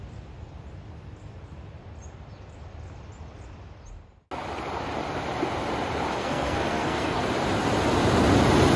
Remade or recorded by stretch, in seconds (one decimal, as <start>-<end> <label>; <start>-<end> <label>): 0.0-6.2 recorded; 6.2-7.2 remade; 7.2-8.8 recorded